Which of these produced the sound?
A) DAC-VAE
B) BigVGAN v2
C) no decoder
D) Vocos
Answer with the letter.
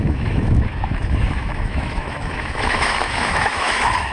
A